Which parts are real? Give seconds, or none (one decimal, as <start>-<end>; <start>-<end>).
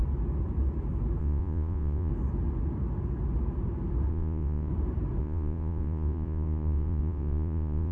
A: 0.0-1.2; 2.1-4.1; 4.7-5.2